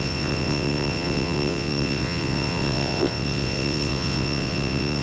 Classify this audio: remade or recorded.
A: remade